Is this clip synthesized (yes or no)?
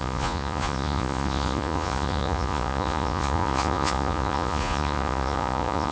yes